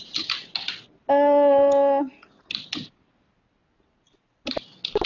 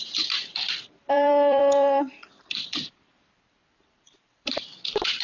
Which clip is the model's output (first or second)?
second